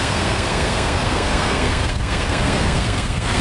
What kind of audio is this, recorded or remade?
remade